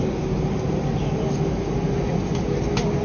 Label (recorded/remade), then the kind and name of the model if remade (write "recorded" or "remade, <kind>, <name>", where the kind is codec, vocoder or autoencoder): recorded